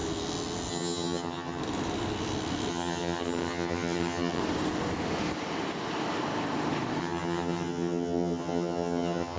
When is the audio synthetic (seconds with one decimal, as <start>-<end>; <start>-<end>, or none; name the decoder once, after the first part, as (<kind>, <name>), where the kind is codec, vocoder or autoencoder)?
0.7-1.6 (vocoder, HiFi-GAN); 2.7-4.4; 7.0-9.4